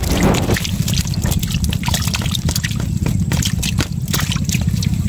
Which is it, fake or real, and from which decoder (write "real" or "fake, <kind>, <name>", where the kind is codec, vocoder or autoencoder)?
real